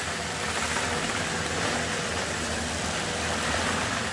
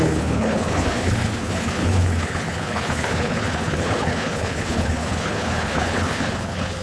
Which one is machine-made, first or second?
second